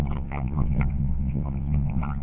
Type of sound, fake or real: fake